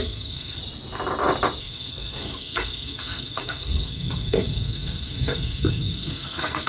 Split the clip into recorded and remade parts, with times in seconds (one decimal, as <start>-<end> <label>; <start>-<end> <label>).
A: 0.0-0.6 remade; 0.6-1.6 recorded; 1.6-6.7 remade